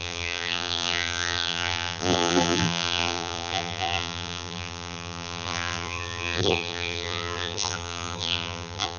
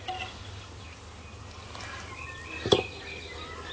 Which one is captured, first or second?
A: second